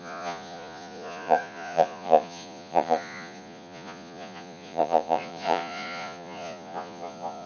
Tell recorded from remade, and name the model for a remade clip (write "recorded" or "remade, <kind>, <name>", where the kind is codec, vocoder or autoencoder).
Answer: remade, vocoder, Vocos